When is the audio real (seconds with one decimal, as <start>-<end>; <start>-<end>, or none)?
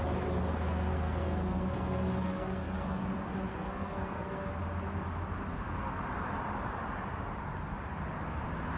0.0-0.5; 3.0-3.5; 4.5-5.5; 6.0-8.8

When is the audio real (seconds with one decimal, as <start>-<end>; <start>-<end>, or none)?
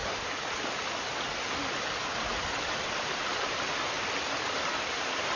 0.0-5.4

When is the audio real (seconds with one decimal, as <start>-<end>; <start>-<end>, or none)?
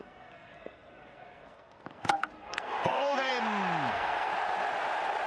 3.3-3.9; 4.3-5.3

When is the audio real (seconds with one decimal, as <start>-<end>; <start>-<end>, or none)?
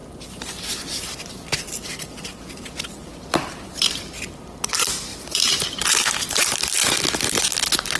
4.6-5.1; 6.9-8.0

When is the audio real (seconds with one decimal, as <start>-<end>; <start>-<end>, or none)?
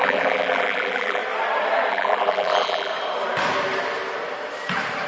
1.2-1.9; 2.9-5.1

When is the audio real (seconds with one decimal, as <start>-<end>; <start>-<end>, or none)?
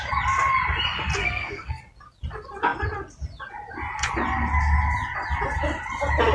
0.0-1.2; 1.8-6.3